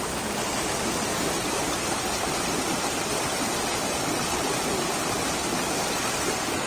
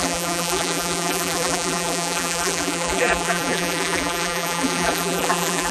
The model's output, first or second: second